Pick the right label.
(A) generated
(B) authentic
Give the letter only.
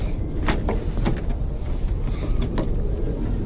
B